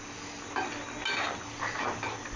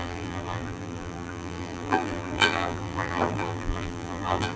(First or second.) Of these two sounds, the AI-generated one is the second